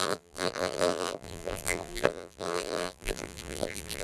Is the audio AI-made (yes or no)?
yes